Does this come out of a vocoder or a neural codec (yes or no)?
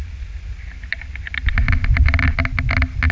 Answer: no